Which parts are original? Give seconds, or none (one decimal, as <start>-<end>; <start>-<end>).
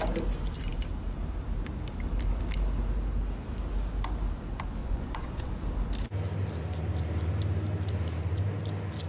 0.0-4.8; 5.5-9.1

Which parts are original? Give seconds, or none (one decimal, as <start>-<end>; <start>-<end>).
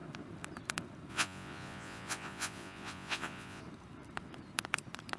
0.0-1.1; 3.6-5.2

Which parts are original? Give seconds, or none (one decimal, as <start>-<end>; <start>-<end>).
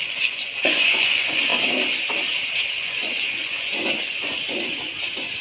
1.5-2.8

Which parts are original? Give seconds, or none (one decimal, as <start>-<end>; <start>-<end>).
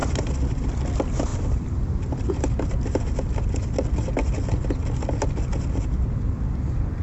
0.0-7.0